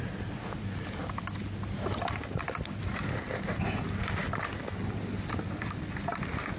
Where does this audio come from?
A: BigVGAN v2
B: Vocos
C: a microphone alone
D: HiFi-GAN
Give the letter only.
C